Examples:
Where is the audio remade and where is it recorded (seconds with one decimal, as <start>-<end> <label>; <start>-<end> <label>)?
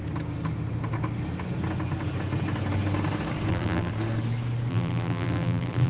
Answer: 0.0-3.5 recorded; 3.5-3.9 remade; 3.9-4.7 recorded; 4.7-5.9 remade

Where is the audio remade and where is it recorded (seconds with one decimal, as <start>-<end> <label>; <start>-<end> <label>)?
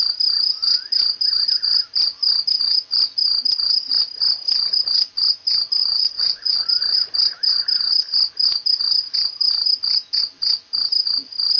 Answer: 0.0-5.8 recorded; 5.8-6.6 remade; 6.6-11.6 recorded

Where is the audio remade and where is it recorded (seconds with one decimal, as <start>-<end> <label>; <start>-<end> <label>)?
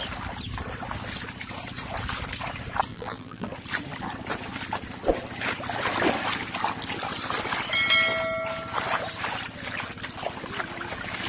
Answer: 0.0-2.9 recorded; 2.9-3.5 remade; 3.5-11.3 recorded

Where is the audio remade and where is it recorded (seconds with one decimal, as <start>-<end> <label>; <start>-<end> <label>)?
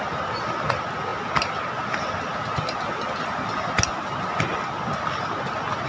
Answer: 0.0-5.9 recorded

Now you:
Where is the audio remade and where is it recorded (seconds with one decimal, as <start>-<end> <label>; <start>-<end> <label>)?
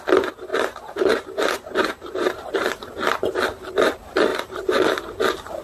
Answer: 0.0-0.5 recorded; 0.5-2.9 remade; 2.9-4.3 recorded; 4.3-5.0 remade; 5.0-5.6 recorded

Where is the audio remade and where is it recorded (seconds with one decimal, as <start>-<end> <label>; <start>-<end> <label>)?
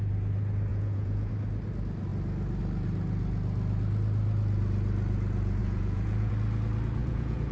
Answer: 0.0-0.7 recorded; 0.7-1.3 remade; 1.3-5.6 recorded; 5.6-6.3 remade; 6.3-7.0 recorded; 7.0-7.5 remade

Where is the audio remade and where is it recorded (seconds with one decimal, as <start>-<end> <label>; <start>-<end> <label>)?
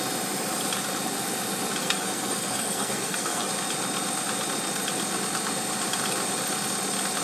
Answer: 0.0-1.8 recorded; 1.8-3.5 remade; 3.5-7.2 recorded